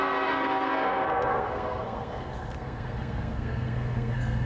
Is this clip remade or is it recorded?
remade